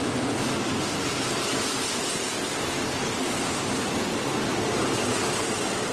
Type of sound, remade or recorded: recorded